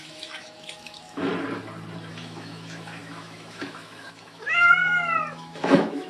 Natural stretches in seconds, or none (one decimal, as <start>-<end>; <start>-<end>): 1.3-2.1; 4.8-5.3